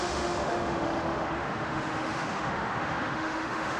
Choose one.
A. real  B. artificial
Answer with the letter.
B